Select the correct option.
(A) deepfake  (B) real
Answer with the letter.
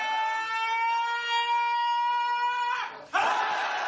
B